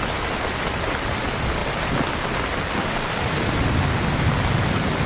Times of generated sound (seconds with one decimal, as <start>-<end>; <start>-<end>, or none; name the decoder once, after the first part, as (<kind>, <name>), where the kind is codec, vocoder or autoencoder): none